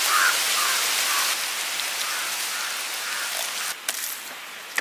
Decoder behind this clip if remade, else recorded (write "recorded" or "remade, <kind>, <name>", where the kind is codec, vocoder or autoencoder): recorded